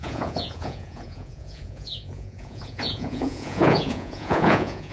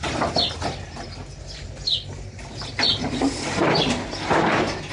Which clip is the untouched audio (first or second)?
second